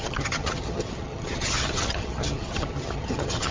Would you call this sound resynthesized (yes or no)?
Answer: yes